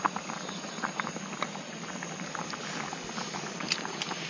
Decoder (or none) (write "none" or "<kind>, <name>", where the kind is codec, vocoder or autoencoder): none